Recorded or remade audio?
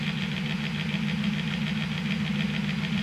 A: recorded